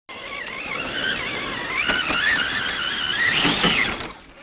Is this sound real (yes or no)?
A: yes